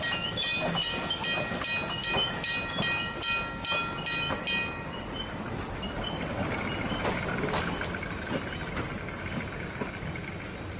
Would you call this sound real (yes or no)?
yes